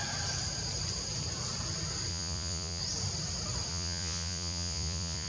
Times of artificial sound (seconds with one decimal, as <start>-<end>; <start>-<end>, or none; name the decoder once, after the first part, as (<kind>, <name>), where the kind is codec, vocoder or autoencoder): 2.1-2.8 (vocoder, Vocos); 3.7-5.3